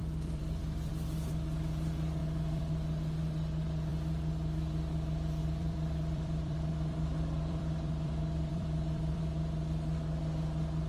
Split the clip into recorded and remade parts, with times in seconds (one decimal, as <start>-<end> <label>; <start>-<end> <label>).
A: 0.0-0.9 remade; 0.9-2.2 recorded; 2.2-2.7 remade; 2.7-5.4 recorded; 5.4-9.2 remade; 9.2-10.9 recorded